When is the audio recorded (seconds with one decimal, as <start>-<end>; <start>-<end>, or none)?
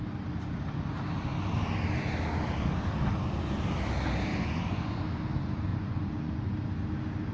0.0-4.3; 5.0-5.7; 6.5-7.3